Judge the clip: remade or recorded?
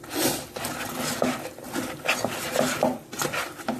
recorded